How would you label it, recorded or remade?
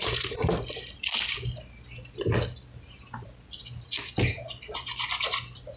recorded